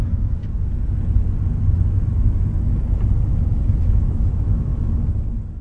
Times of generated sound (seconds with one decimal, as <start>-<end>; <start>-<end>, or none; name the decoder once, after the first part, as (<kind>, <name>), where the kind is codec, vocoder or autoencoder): 0.0-0.4 (autoencoder, DAC-VAE); 3.8-4.7